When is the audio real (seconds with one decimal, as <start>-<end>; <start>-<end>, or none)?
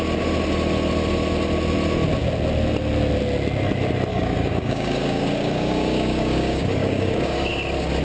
0.0-4.1; 7.5-8.0